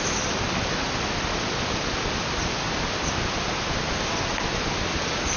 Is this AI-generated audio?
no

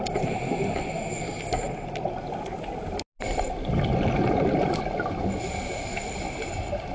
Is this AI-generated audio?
no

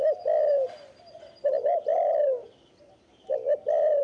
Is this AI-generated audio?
no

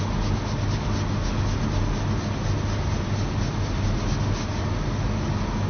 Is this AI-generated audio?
no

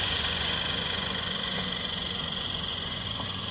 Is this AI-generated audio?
yes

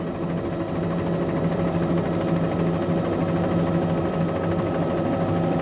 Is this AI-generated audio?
no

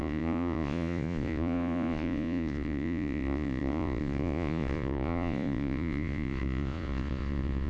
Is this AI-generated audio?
yes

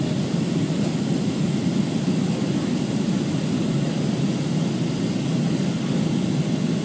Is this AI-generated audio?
no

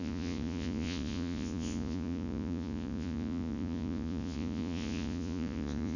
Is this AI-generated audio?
yes